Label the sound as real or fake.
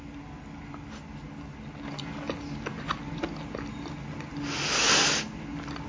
real